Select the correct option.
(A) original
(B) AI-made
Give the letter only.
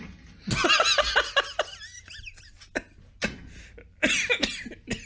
A